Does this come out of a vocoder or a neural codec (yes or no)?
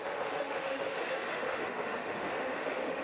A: yes